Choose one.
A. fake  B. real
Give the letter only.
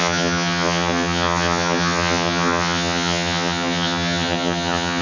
A